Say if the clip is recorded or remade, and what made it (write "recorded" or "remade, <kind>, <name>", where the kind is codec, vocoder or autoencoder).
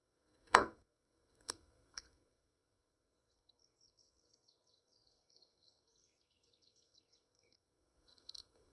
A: remade, codec, SNAC